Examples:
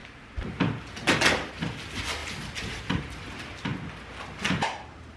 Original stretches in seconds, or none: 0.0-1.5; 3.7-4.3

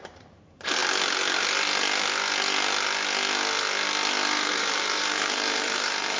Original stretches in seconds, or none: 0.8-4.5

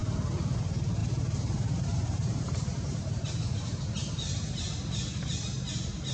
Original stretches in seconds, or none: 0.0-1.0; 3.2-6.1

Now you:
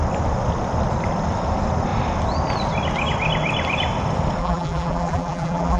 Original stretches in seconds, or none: 0.0-4.4

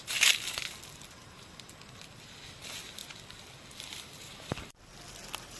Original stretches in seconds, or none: 0.0-5.6

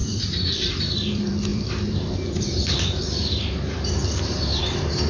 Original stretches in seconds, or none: none

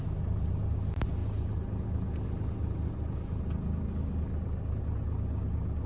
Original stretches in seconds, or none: 0.5-5.9

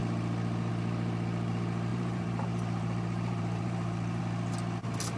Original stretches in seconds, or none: 0.0-1.9; 4.2-5.2